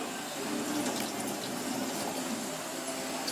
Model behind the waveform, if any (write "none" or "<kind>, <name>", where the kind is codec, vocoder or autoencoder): none